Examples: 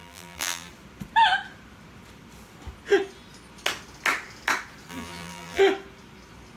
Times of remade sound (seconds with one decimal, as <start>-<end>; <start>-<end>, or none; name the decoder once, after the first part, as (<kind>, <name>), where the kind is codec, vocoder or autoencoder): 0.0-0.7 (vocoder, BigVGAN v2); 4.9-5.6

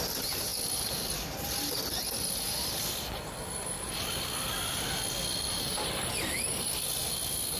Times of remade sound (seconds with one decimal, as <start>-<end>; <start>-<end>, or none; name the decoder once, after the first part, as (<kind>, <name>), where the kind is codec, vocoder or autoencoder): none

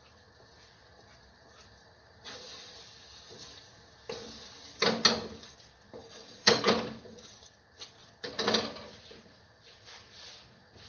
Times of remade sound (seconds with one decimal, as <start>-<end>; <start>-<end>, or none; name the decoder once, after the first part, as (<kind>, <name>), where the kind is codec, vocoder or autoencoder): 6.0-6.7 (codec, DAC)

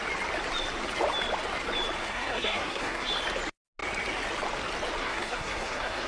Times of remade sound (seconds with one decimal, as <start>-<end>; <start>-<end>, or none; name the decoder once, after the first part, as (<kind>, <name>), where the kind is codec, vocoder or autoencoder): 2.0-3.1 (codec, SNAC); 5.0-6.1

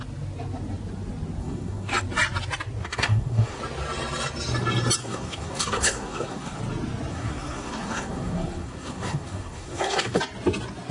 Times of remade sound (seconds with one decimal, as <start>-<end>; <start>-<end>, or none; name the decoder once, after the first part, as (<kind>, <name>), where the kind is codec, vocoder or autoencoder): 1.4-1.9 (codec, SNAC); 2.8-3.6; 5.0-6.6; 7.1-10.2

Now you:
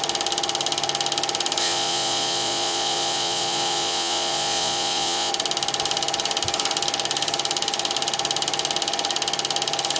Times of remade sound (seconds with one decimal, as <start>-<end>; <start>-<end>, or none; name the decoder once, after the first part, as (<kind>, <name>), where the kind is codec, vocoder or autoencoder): 1.6-5.3 (vocoder, Vocos)